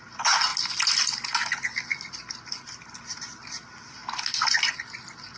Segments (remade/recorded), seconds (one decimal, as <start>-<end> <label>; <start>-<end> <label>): 0.0-5.4 recorded